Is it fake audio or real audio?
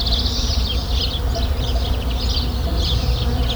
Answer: real